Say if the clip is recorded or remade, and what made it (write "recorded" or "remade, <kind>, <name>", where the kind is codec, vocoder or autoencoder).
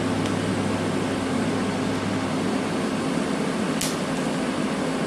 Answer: recorded